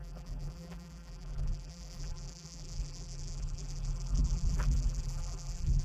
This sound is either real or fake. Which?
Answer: fake